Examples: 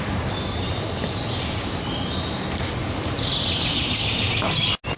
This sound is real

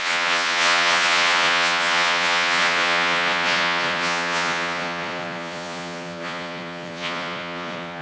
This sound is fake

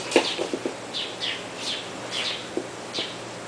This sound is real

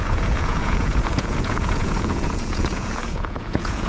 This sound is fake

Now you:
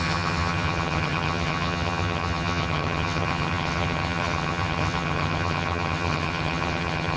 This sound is fake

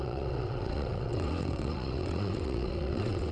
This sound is fake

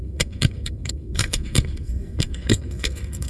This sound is fake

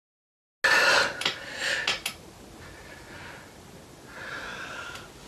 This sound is real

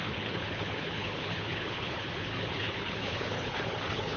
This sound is fake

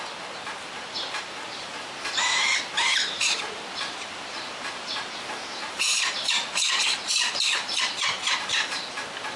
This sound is fake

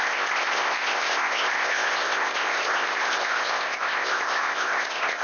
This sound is fake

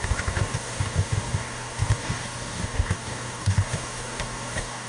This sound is fake